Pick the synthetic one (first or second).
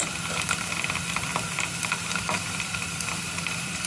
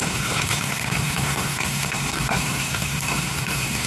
second